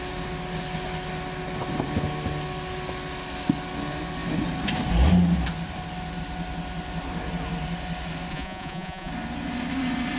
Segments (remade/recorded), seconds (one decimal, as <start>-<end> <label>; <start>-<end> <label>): 0.0-8.3 recorded; 8.3-9.1 remade; 9.1-10.2 recorded